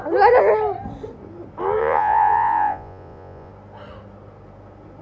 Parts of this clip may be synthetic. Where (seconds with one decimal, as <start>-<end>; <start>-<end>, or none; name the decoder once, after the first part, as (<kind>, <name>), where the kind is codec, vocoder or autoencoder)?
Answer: 1.8-3.5 (vocoder, Vocos)